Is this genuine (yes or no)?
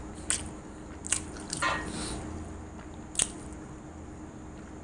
yes